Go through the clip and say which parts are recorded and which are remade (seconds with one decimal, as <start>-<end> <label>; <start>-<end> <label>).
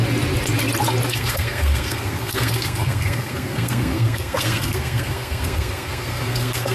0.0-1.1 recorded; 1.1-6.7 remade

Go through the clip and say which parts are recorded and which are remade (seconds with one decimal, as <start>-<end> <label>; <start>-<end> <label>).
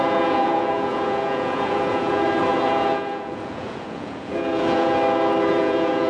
0.0-5.0 remade; 5.0-5.5 recorded; 5.5-6.1 remade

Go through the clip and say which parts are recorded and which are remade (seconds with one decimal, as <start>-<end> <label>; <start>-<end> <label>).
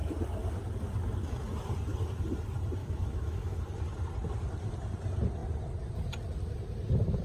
0.0-2.8 recorded; 2.8-3.6 remade; 3.6-7.2 recorded